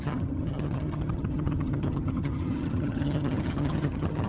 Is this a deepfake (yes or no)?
yes